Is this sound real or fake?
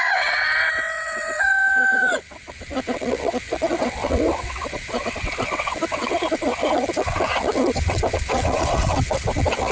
fake